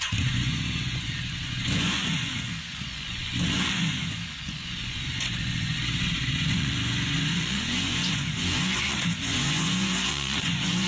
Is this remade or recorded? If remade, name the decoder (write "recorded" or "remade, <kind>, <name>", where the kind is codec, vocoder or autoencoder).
remade, vocoder, Vocos